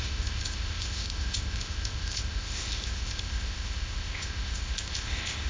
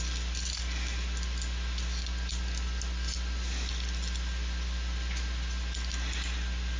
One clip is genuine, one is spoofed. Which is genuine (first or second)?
second